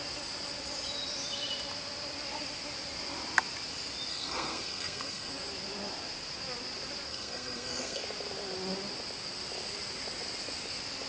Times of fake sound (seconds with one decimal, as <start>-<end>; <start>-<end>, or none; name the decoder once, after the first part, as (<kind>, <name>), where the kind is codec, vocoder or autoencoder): 4.1-5.3 (codec, SNAC); 7.1-8.0